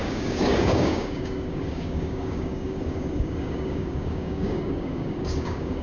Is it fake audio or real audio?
fake